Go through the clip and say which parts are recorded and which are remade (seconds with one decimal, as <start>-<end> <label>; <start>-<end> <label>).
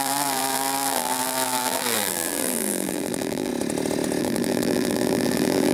0.0-3.5 remade; 3.5-4.2 recorded; 4.2-5.7 remade